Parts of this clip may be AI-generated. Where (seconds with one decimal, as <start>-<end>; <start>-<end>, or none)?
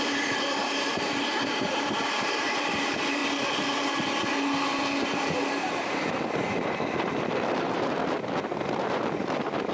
0.0-0.6; 1.3-3.2; 6.1-8.0; 8.9-9.7